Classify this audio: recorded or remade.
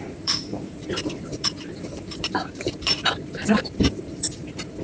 remade